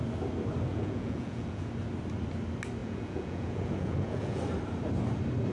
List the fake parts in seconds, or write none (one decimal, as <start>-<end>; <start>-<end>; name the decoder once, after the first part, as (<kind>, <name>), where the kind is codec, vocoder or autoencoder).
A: 0.7-1.7 (vocoder, Vocos); 2.8-4.4